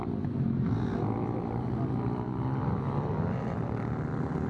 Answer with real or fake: real